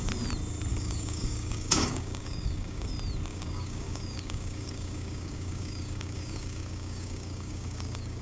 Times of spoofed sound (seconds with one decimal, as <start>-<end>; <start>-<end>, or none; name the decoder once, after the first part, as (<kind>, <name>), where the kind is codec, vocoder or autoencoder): 0.7-2.9 (codec, DAC); 3.3-8.2